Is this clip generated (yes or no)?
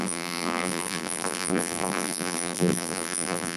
yes